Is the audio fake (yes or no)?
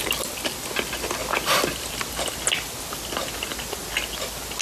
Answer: no